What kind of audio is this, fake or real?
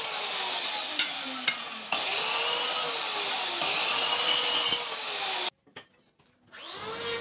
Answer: real